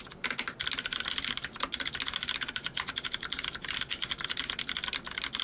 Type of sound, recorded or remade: recorded